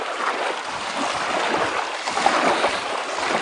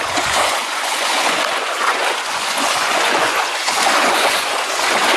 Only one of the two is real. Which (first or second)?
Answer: first